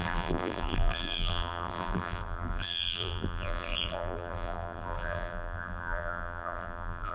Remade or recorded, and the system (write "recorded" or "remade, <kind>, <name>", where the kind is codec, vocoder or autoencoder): remade, vocoder, BigVGAN v2